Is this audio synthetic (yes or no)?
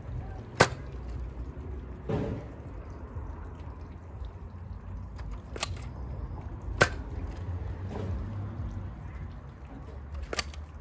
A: no